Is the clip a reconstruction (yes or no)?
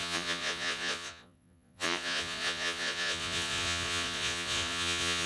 yes